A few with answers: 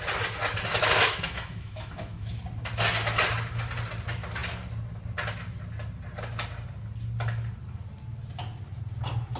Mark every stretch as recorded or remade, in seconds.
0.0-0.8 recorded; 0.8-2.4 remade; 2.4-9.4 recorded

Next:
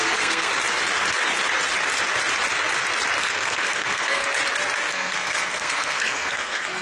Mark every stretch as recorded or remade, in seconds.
0.0-0.5 remade; 0.5-3.2 recorded; 3.2-4.2 remade; 4.2-4.9 recorded; 4.9-6.8 remade

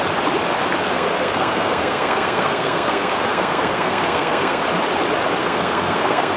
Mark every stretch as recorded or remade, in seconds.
0.0-0.8 recorded; 0.8-4.6 remade; 4.6-5.4 recorded; 5.4-6.4 remade

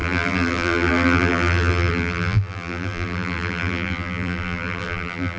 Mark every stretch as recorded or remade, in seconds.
0.0-5.4 remade

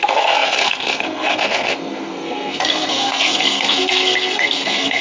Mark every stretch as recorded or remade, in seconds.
0.0-5.0 remade

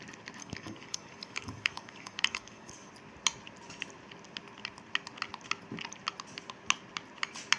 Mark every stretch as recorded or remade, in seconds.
0.0-0.4 recorded; 0.4-2.9 remade; 2.9-7.6 recorded

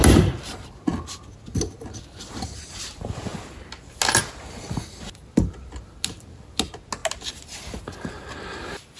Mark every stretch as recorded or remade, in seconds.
0.0-9.0 recorded